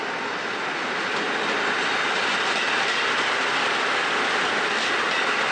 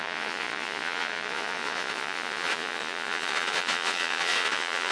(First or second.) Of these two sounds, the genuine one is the first